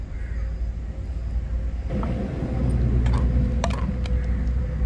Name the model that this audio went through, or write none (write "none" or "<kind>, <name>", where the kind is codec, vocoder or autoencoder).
none